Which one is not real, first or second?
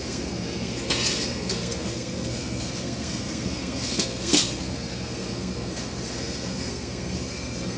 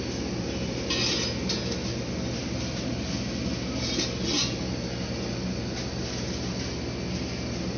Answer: first